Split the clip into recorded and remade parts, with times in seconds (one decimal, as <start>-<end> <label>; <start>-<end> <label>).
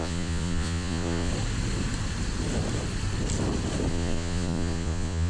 0.0-1.3 remade; 1.3-3.9 recorded; 3.9-5.3 remade